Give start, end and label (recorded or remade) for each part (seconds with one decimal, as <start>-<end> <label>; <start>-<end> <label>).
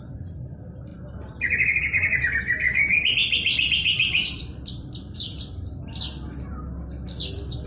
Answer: 0.0-3.2 recorded; 3.2-6.0 remade; 6.0-7.7 recorded